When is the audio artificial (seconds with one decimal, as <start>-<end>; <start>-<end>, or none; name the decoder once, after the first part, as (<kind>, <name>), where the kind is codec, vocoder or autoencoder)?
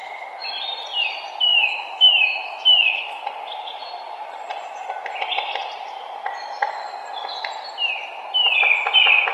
1.5-3.2 (autoencoder, DAC-VAE)